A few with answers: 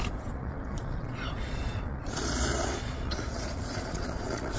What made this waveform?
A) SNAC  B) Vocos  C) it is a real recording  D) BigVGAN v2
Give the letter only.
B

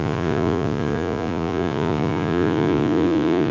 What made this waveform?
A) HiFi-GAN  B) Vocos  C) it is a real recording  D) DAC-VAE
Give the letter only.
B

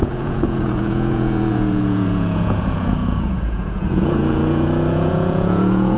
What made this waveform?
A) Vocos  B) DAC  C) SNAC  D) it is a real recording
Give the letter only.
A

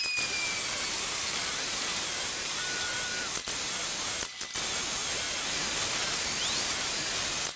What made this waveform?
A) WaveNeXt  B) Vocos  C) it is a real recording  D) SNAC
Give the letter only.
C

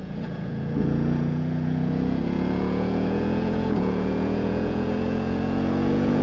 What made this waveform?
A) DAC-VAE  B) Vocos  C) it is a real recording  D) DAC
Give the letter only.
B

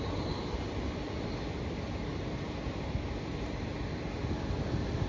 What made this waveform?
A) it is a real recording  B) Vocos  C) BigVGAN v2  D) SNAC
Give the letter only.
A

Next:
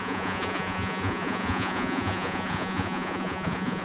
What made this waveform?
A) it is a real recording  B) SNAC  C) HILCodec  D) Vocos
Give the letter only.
D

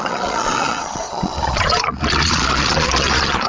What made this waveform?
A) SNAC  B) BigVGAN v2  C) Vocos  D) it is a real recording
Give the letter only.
C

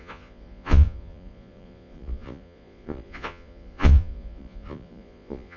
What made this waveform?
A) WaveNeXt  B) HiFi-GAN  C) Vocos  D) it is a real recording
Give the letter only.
C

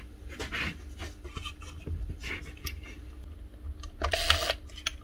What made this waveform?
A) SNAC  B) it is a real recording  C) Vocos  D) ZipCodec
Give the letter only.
B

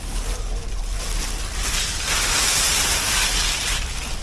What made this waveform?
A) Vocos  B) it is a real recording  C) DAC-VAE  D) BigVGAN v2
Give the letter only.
B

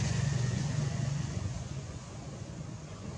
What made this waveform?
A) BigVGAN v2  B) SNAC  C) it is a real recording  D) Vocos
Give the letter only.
D